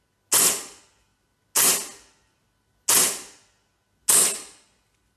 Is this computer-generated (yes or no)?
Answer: no